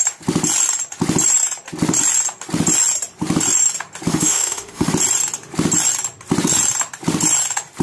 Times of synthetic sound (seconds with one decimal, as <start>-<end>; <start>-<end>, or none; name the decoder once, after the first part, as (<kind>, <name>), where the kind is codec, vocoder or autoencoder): 4.1-4.9 (autoencoder, DAC-VAE)